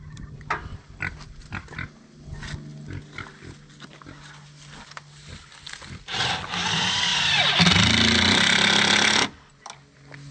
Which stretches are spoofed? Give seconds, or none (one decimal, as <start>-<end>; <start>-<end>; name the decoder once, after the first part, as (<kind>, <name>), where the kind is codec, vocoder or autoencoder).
none

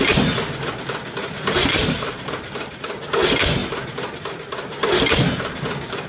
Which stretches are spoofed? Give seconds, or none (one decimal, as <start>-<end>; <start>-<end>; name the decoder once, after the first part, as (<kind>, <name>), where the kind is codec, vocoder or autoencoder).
1.2-3.0 (vocoder, BigVGAN v2); 3.6-4.3